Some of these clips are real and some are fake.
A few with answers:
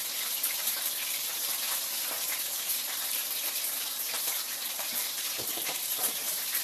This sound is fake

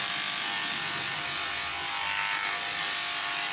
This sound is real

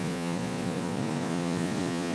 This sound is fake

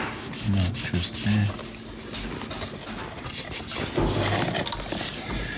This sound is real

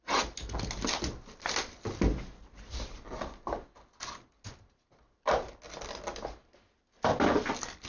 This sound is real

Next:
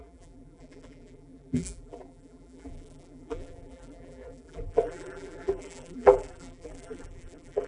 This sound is fake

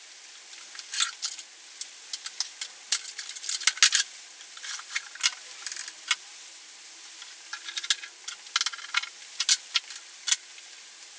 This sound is real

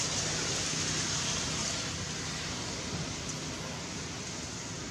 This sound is real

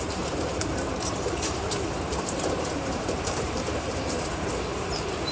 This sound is fake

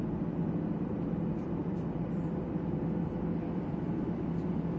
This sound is real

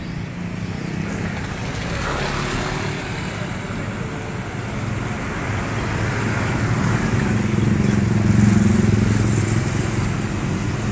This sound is real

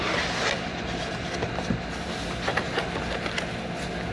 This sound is real